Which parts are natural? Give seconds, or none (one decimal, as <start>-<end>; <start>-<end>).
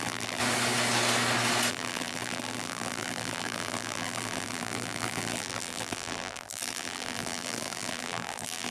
0.4-1.7